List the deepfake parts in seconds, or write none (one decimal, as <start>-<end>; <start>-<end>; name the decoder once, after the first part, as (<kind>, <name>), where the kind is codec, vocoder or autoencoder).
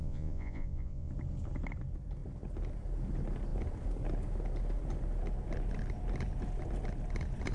0.0-1.1 (vocoder, Vocos)